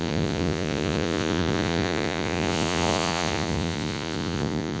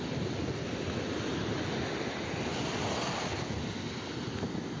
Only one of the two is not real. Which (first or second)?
first